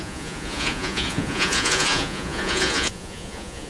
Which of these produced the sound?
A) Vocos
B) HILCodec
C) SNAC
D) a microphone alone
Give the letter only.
A